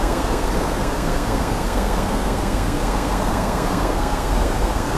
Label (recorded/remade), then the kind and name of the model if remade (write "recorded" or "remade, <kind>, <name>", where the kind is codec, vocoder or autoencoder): remade, codec, SNAC